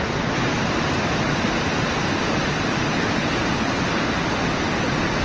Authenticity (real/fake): real